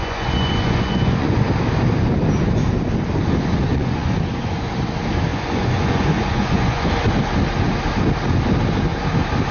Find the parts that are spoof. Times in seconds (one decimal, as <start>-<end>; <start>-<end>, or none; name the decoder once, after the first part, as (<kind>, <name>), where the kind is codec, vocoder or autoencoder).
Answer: 0.0-1.5 (vocoder, Vocos); 3.7-4.7; 5.3-6.9